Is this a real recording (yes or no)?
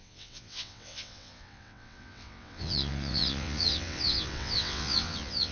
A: no